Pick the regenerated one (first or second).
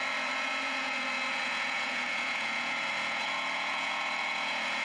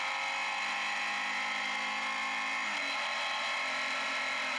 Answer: first